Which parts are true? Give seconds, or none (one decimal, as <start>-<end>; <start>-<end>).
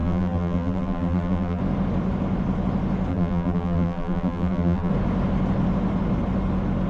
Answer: 1.6-3.1; 4.9-6.9